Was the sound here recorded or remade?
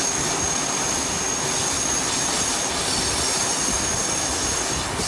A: recorded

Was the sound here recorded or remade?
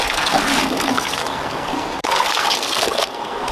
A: remade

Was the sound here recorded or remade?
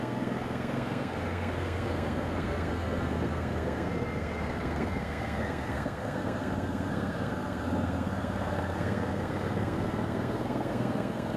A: remade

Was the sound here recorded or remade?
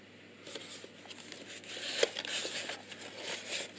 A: recorded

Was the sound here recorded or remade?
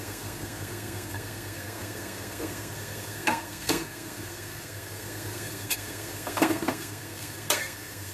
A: remade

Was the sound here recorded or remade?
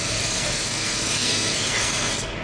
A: remade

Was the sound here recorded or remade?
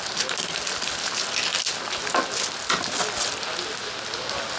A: recorded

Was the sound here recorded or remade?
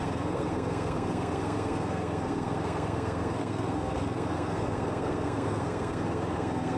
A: remade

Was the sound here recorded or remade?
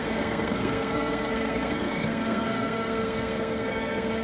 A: remade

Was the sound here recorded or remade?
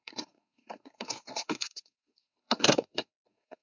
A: remade